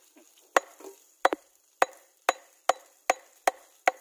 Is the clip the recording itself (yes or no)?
yes